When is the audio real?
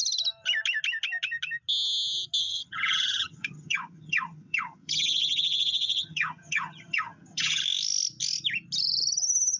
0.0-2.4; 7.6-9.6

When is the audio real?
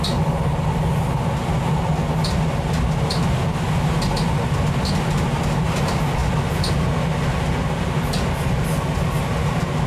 0.0-9.9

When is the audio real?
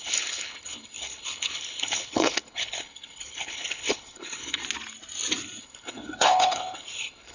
4.6-5.6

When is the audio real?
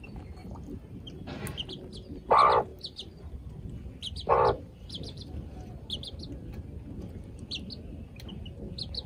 0.0-0.4; 1.4-2.7; 3.5-4.3; 6.2-9.1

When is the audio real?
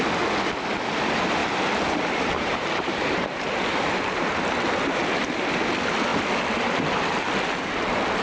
0.0-1.4; 4.4-8.2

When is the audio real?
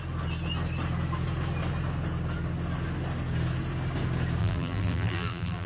0.0-4.4